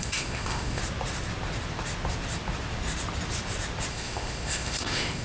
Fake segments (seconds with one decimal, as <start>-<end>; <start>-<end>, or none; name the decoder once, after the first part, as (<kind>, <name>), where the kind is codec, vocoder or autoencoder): 0.0-0.8 (codec, ZipCodec); 3.9-5.2